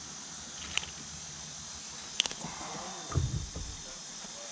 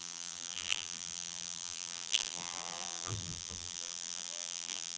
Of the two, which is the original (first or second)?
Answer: first